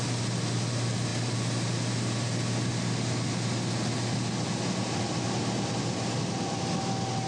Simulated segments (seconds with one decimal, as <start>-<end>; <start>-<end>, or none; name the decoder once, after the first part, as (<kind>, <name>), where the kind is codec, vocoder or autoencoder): none